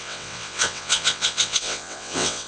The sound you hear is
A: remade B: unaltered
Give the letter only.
A